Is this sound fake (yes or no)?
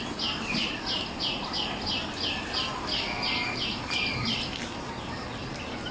no